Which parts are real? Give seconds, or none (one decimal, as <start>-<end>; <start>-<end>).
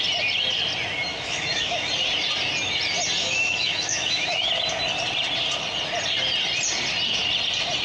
0.0-1.1; 1.9-3.2; 4.5-7.8